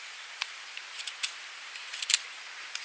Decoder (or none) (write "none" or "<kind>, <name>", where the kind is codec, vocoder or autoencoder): vocoder, BigVGAN v2